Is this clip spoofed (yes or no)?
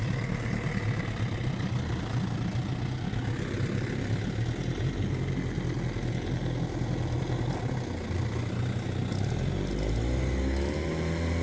no